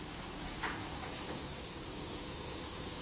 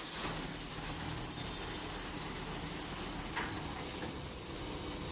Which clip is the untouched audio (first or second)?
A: second